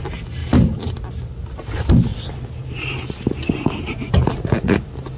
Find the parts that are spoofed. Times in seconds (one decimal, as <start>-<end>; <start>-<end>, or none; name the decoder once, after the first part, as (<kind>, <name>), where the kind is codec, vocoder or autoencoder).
0.4-0.9 (vocoder, BigVGAN v2)